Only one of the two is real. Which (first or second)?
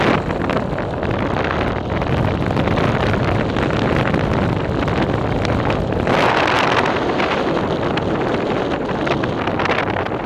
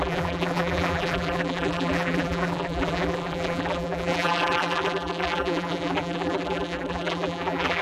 first